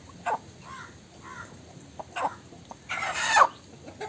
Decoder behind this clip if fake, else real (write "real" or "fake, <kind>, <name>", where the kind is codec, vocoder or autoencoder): real